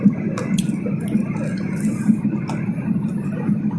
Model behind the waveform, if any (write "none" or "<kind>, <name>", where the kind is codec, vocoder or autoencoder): none